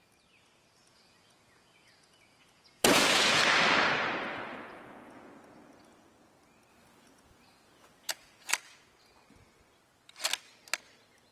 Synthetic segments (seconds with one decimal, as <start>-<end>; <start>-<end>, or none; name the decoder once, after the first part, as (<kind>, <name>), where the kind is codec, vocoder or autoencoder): 0.8-3.4 (vocoder, Vocos); 4.3-5.3; 6.7-8.5